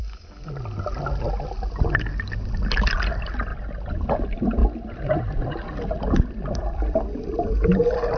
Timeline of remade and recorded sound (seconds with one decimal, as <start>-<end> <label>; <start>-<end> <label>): 0.0-0.5 remade; 0.5-8.2 recorded